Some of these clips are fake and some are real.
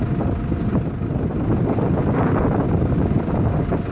real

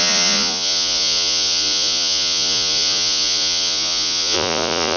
fake